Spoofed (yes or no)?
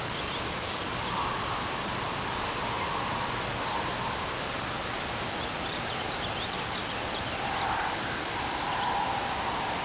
no